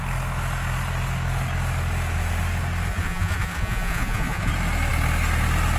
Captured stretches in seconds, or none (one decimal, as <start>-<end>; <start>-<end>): 0.0-2.9; 4.5-5.8